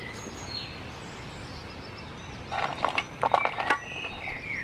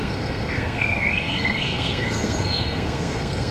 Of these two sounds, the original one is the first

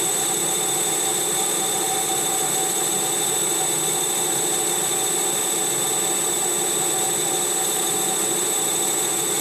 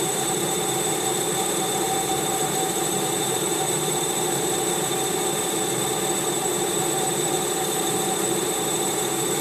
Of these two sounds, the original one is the first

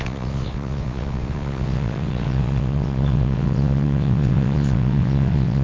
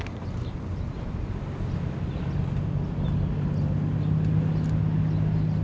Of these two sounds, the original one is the second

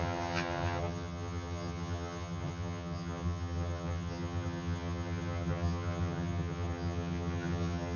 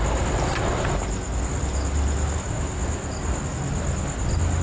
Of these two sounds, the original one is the second